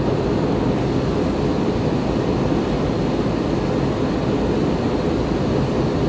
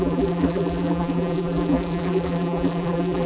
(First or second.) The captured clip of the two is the first